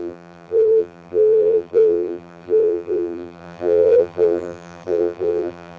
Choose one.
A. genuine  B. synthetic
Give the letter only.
B